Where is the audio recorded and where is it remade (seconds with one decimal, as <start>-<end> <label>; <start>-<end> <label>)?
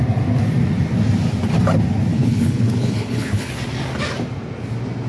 0.0-2.1 recorded; 2.1-3.5 remade; 3.5-5.1 recorded